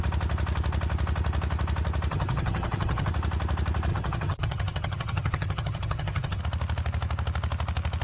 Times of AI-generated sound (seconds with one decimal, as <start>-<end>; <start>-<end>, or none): 2.1-3.1; 3.9-6.4